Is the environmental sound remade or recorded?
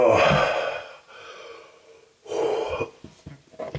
recorded